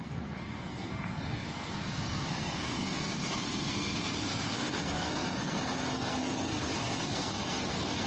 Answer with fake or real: fake